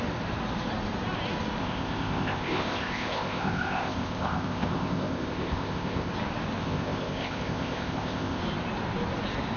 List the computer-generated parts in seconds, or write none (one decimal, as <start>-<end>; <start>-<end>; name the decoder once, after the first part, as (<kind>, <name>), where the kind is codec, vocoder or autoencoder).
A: 1.6-6.1 (codec, ZipCodec); 6.6-8.4